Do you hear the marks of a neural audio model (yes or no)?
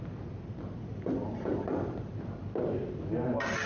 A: no